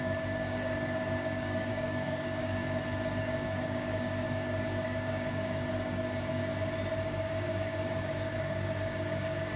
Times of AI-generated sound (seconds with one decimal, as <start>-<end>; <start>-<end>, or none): 0.0-2.6; 3.2-6.4; 7.0-9.6